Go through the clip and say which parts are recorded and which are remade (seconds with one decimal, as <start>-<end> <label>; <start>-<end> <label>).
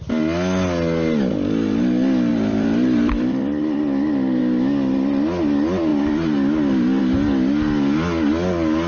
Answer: 0.0-2.3 recorded; 2.3-3.8 remade; 3.8-5.9 recorded; 5.9-7.0 remade; 7.0-8.9 recorded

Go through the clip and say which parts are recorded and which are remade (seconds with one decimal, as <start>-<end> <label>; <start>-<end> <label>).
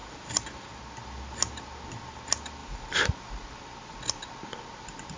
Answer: 0.0-0.8 remade; 0.8-2.6 recorded; 2.6-3.1 remade; 3.1-5.2 recorded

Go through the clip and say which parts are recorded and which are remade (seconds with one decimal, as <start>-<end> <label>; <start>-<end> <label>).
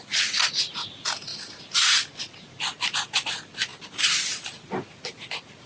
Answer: 0.0-5.7 recorded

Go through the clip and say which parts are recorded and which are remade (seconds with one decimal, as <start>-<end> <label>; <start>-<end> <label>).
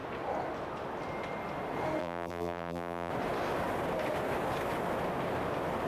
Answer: 0.0-2.0 recorded; 2.0-3.1 remade; 3.1-5.9 recorded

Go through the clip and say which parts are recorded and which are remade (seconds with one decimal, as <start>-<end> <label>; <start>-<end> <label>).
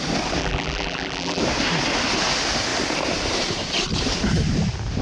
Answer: 0.0-0.4 recorded; 0.4-1.4 remade; 1.4-5.0 recorded